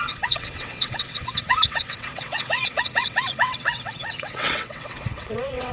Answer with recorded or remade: remade